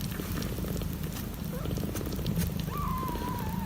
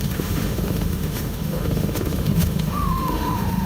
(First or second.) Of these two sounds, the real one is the first